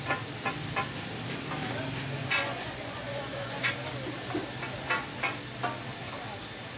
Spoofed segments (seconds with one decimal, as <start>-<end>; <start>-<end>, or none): 2.2-3.7